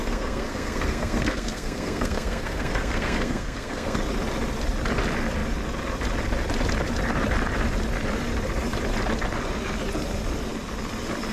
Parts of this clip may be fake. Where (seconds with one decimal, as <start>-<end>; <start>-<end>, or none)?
0.0-4.0